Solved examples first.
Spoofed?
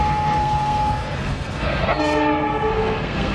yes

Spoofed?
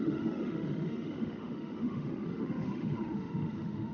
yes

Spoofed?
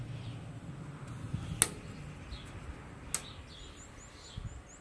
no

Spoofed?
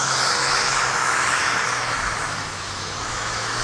yes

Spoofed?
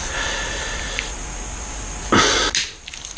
no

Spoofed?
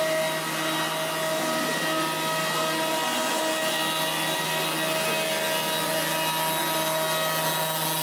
no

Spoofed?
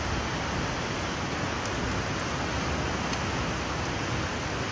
no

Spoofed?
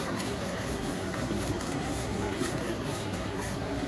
yes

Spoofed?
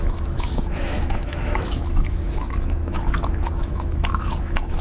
yes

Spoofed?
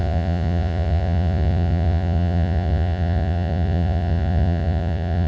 yes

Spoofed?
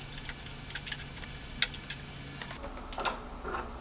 no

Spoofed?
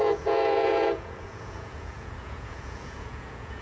yes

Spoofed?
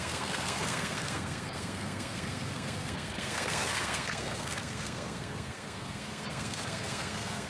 yes